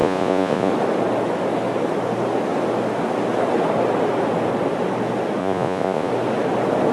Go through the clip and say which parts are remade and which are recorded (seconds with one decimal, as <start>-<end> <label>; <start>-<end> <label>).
0.0-0.7 remade; 0.7-5.4 recorded; 5.4-6.1 remade; 6.1-6.9 recorded